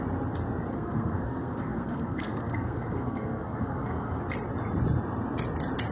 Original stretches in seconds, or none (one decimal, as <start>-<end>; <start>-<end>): 0.0-0.7; 4.2-5.9